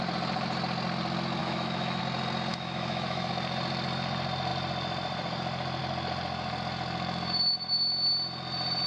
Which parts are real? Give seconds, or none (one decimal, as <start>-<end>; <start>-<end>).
0.0-1.4; 2.0-2.5; 3.3-8.9